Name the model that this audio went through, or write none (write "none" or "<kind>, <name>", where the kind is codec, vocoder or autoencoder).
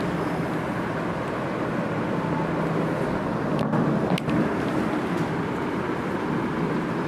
none